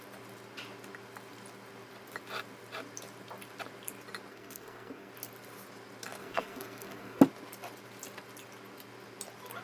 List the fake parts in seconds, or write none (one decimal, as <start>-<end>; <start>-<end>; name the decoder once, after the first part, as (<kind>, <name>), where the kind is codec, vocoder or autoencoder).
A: 4.3-5.1 (codec, SNAC); 6.2-7.2